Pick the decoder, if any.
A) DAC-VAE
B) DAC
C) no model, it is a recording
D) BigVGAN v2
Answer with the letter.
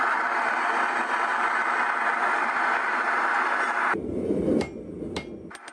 C